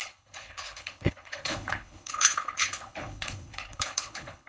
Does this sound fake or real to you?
fake